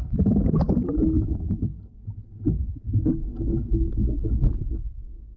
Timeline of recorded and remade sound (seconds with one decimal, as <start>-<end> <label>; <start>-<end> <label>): 0.0-5.4 recorded